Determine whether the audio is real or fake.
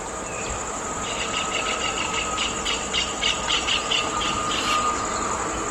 real